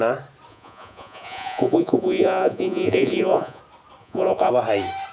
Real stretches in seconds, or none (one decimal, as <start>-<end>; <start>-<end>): 0.0-0.5; 3.6-4.0; 4.5-5.1